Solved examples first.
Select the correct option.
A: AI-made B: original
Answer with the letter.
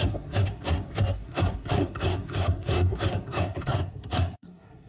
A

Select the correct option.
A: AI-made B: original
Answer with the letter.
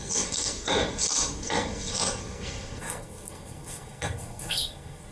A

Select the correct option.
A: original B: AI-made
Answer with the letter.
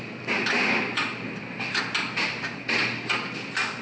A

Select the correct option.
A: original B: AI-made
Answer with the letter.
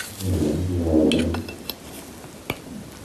A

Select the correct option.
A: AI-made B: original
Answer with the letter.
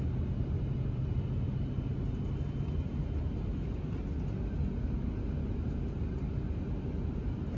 B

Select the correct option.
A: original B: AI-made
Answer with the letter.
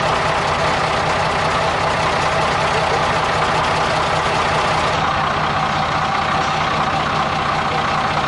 A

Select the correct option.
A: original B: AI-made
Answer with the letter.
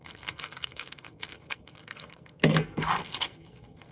B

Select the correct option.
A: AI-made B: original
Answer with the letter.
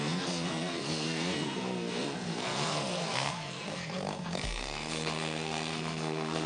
A